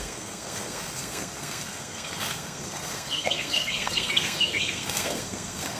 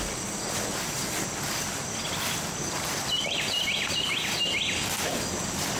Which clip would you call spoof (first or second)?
first